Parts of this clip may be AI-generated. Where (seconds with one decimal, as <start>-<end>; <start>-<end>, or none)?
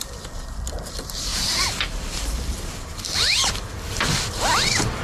0.0-5.0